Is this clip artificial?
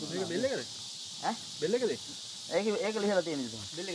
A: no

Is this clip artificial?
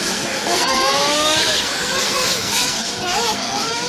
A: yes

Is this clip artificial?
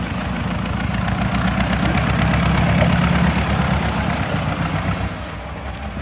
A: no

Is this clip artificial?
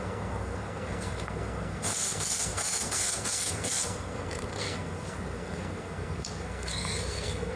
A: yes